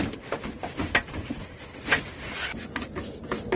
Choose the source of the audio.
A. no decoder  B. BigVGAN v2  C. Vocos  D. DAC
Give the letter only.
A